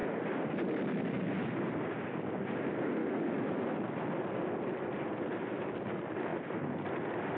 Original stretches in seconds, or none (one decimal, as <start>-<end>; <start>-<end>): 0.0-3.0; 3.6-7.4